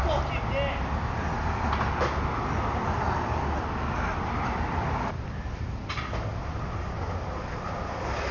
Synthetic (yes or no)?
no